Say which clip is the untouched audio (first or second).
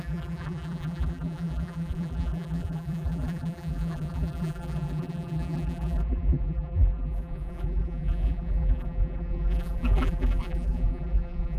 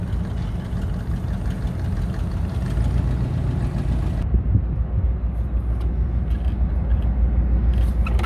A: second